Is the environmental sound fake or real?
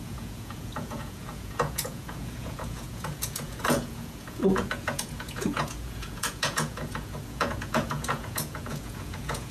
fake